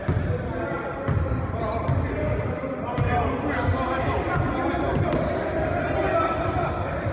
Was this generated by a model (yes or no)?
no